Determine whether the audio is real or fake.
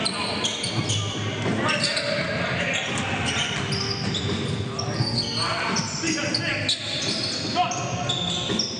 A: real